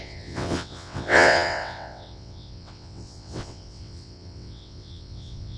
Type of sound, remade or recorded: remade